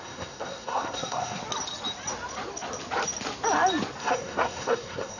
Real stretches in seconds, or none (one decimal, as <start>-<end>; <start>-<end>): 1.4-4.0